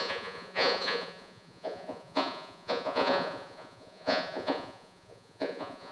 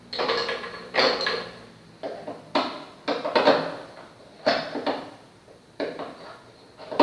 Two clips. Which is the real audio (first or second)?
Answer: second